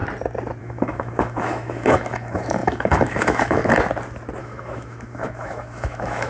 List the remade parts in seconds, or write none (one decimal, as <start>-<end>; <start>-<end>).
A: 0.6-3.6; 4.4-6.3